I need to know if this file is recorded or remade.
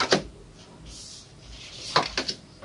recorded